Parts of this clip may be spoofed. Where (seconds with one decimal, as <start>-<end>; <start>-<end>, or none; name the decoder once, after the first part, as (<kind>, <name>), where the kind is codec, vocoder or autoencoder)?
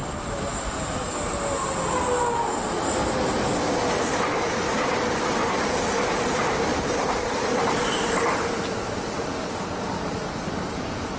0.0-0.7 (vocoder, BigVGAN v2); 6.7-10.6